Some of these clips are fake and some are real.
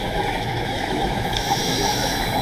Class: fake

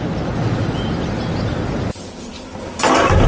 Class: real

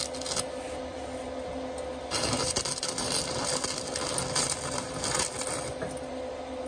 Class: real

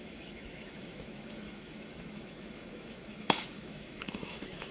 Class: fake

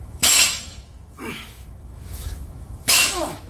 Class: fake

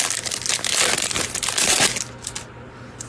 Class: real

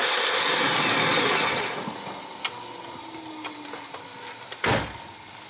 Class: real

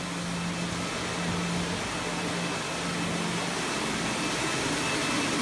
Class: real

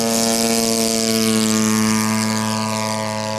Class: real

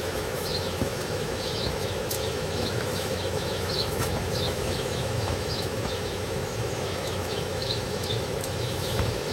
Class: fake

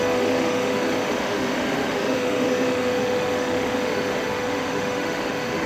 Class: fake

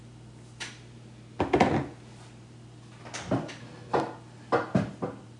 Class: real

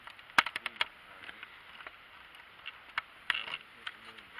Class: real